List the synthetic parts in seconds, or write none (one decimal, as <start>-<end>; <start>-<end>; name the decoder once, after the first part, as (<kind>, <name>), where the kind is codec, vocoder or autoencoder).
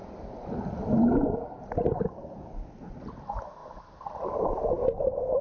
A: none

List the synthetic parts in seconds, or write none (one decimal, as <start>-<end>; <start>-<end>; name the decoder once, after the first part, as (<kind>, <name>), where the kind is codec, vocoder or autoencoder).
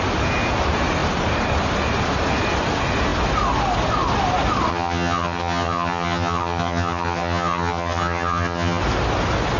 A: 4.7-8.8 (vocoder, HiFi-GAN)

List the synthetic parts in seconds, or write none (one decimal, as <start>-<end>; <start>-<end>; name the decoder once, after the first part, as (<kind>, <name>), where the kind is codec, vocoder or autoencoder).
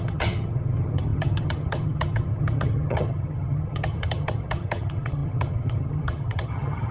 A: 0.0-6.9 (vocoder, HiFi-GAN)